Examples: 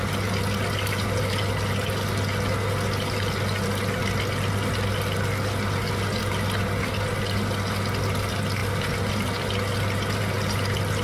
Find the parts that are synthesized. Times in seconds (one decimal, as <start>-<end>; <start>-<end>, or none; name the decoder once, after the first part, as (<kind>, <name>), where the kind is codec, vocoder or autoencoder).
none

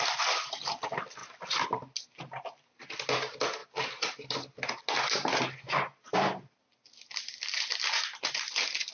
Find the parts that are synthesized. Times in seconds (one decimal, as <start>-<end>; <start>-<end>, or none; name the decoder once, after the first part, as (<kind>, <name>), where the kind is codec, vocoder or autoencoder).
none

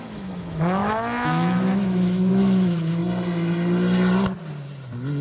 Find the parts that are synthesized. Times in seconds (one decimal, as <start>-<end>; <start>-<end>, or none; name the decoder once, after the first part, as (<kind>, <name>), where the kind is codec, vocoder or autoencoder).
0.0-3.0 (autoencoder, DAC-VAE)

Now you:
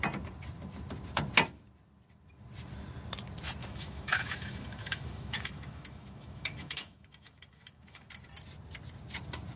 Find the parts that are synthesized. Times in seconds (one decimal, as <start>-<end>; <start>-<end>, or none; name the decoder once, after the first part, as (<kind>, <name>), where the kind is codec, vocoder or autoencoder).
3.6-8.1 (autoencoder, DAC-VAE)